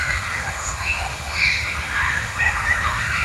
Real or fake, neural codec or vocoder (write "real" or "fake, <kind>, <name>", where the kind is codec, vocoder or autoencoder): fake, autoencoder, DAC-VAE